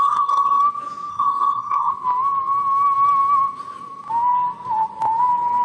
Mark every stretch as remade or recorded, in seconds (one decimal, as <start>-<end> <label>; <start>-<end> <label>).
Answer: 0.0-0.6 remade; 0.6-1.1 recorded; 1.1-1.9 remade; 1.9-5.6 recorded